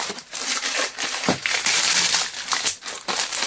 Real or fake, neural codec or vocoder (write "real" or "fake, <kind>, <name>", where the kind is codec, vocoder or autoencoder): fake, vocoder, BigVGAN v2